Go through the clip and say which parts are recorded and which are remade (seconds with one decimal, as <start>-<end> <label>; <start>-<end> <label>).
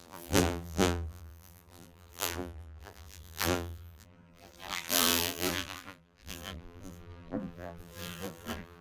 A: 0.0-8.8 remade